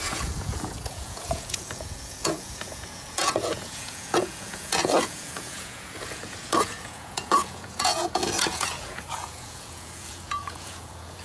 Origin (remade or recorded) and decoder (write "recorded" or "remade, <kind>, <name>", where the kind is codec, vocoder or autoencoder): remade, vocoder, Vocos